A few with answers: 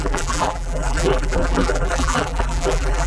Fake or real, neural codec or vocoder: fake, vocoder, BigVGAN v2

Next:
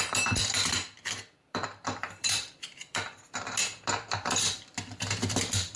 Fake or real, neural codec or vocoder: fake, vocoder, BigVGAN v2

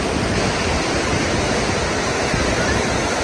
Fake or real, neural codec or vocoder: real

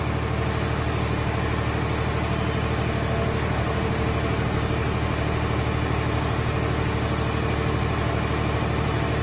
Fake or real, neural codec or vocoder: real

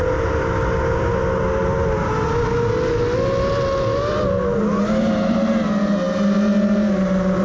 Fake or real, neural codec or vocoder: real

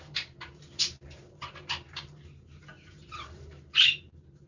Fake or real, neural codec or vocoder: fake, vocoder, BigVGAN v2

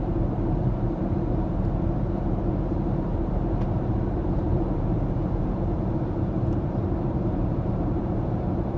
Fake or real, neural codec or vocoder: fake, vocoder, BigVGAN v2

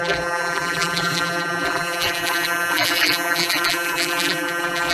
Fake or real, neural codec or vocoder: fake, vocoder, BigVGAN v2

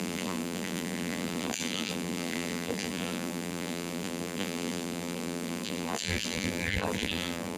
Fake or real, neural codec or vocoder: fake, vocoder, BigVGAN v2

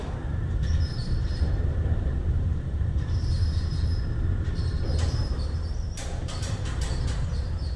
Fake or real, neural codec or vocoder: fake, vocoder, BigVGAN v2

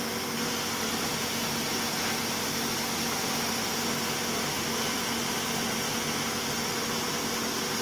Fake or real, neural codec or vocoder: real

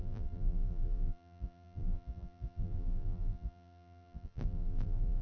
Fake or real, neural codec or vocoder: fake, vocoder, BigVGAN v2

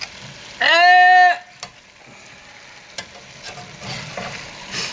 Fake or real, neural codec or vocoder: real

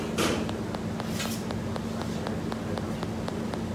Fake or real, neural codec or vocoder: real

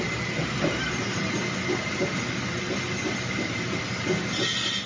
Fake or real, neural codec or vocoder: real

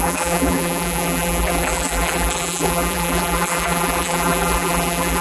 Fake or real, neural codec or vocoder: fake, vocoder, BigVGAN v2